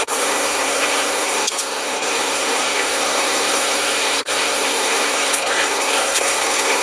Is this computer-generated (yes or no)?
yes